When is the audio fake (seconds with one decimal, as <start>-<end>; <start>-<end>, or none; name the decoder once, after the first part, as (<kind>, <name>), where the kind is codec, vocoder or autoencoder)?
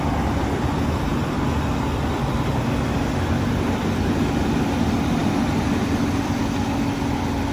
none